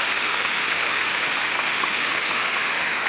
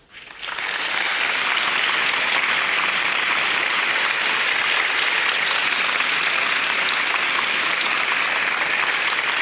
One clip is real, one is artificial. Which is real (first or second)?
second